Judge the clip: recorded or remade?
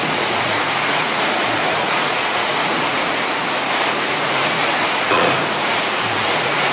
remade